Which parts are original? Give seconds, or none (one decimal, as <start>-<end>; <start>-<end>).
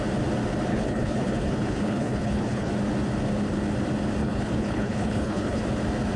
0.0-0.7; 2.7-4.2; 5.6-6.2